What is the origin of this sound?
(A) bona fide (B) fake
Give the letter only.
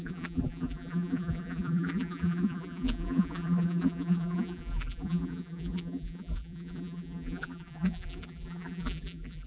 B